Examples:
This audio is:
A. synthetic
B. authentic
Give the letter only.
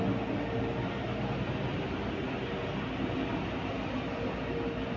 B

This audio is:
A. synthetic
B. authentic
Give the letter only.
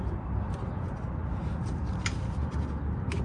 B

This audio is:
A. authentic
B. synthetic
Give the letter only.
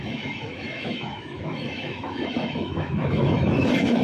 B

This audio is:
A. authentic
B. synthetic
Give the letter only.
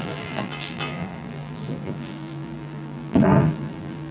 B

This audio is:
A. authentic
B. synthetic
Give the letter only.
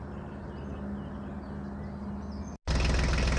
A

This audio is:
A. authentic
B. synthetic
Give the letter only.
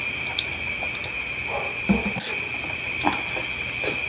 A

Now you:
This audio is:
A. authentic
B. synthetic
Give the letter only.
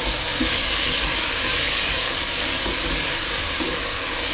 B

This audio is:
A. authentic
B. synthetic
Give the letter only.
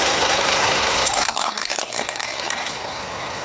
B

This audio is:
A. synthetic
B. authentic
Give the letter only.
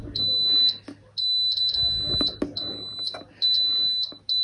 B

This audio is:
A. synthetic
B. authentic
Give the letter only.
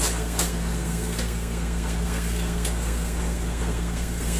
A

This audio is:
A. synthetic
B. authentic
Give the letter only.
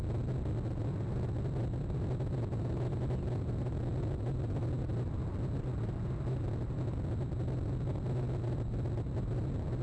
B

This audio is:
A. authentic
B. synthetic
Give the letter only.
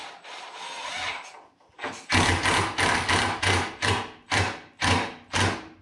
A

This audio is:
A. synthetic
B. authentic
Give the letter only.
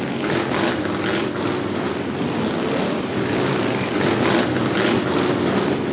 B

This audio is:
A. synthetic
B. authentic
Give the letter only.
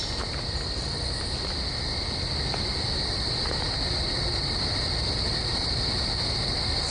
B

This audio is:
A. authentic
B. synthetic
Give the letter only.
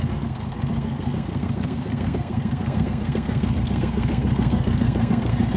B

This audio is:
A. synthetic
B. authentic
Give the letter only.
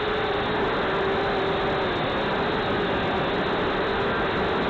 B